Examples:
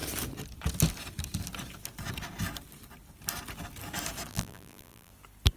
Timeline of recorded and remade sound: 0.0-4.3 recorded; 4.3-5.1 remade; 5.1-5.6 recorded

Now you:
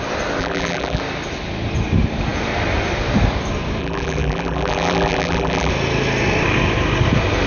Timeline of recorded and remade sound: 0.0-0.4 recorded; 0.4-1.0 remade; 1.0-3.8 recorded; 3.8-5.7 remade; 5.7-7.5 recorded

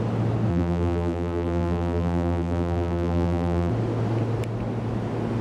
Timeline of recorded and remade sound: 0.0-0.5 recorded; 0.5-3.7 remade; 3.7-5.4 recorded

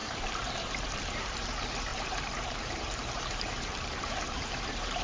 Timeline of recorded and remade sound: 0.0-1.4 remade; 1.4-1.9 recorded; 1.9-5.0 remade

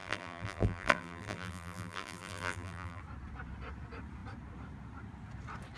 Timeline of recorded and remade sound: 0.0-3.0 remade; 3.0-5.8 recorded